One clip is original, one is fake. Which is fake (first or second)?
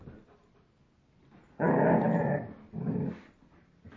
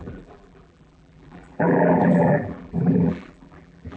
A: second